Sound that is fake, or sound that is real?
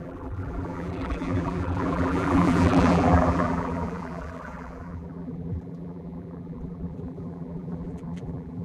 fake